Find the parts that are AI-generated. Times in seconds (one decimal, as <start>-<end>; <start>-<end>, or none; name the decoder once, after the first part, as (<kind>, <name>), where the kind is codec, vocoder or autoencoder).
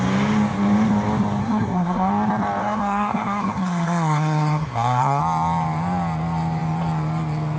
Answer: 1.4-2.1 (codec, SNAC); 2.6-5.2